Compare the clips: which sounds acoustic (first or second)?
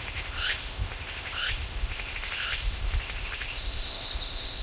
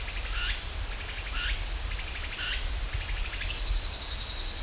second